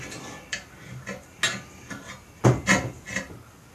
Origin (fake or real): real